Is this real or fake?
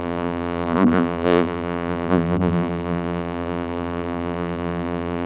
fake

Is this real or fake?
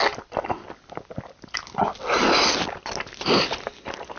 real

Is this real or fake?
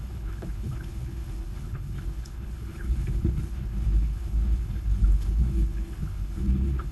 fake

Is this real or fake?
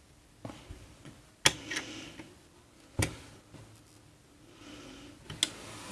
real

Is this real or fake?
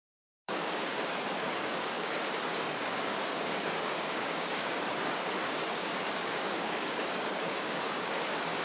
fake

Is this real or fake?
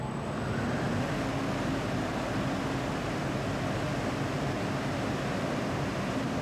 real